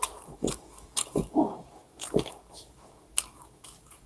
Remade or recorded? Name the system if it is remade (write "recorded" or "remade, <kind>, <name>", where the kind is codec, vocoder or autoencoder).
remade, autoencoder, DAC-VAE